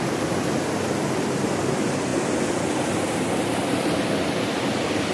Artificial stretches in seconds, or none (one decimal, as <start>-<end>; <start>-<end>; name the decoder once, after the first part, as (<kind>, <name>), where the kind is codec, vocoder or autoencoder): none